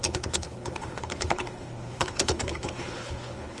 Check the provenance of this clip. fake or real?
fake